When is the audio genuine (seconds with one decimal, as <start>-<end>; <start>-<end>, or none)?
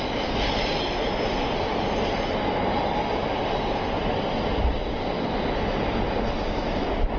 0.0-7.2